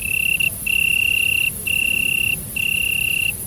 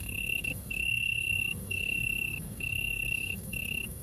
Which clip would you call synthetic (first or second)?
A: second